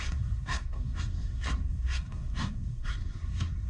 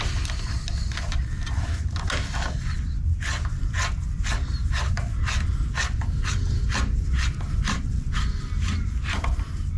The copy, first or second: first